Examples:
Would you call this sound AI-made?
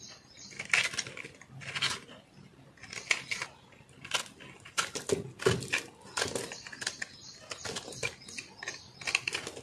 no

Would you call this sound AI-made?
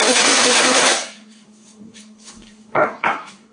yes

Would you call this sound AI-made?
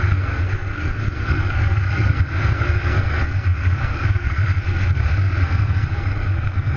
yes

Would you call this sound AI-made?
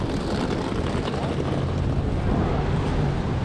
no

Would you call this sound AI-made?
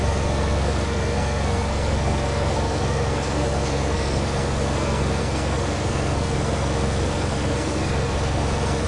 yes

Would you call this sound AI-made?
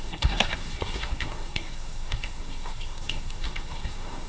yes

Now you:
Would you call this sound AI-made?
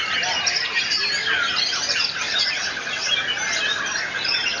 no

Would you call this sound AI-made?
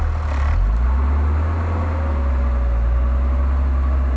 no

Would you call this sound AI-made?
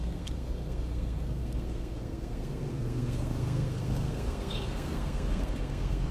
yes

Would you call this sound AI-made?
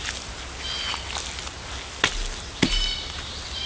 no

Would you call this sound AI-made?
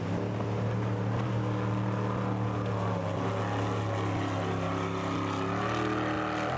no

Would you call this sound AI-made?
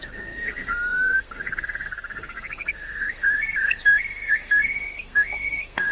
yes